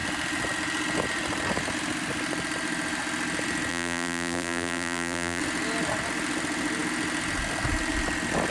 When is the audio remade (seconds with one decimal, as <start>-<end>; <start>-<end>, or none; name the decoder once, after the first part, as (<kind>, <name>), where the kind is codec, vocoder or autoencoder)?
3.7-5.4 (vocoder, BigVGAN v2)